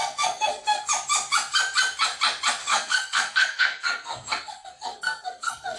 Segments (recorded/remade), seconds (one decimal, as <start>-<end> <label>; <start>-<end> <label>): 0.0-0.9 remade; 0.9-2.6 recorded; 2.6-5.8 remade